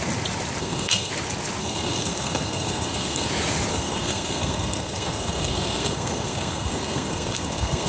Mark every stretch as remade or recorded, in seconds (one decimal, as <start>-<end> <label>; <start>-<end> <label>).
0.0-0.6 recorded; 0.6-1.1 remade; 1.1-1.6 recorded; 1.6-3.3 remade; 3.3-3.7 recorded; 3.7-7.9 remade